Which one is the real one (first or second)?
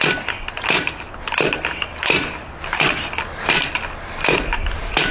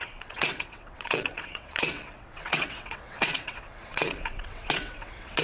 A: first